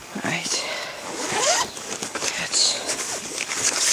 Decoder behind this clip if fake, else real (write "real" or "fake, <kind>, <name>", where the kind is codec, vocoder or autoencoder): fake, codec, DAC